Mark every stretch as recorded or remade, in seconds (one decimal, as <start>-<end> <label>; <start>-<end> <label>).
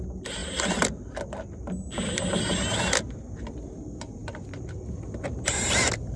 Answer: 0.0-6.2 recorded